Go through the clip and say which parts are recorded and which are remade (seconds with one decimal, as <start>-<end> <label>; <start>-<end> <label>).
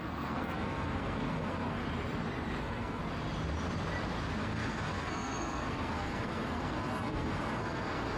0.0-1.8 remade; 1.8-2.6 recorded; 2.6-3.0 remade; 3.0-4.4 recorded; 4.4-8.2 remade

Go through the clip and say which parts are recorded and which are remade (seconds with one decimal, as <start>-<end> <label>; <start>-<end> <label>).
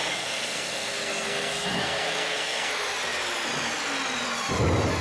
0.0-2.7 remade; 2.7-5.0 recorded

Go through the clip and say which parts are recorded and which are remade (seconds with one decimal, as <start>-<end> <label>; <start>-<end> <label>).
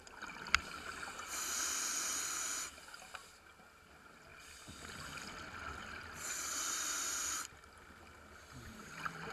0.0-9.3 recorded